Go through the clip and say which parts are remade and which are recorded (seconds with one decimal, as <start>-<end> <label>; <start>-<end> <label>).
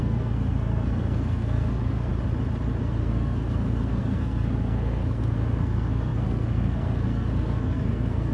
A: 0.0-2.1 remade; 2.1-2.8 recorded; 2.8-8.3 remade